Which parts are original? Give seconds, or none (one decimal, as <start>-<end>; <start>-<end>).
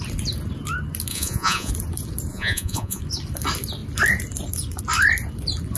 0.0-1.1; 1.7-2.3; 3.0-5.8